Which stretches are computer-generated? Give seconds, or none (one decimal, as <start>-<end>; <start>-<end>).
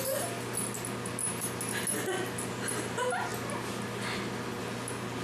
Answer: none